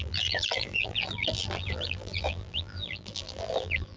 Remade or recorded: remade